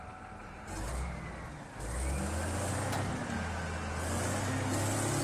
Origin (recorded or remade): recorded